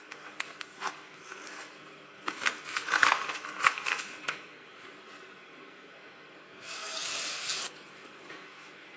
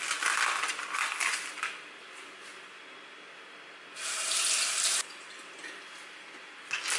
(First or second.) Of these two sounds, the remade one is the first